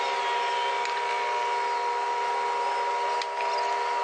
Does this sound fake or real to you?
real